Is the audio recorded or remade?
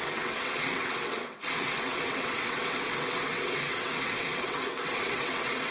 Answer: remade